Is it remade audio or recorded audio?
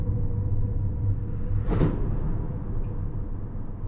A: recorded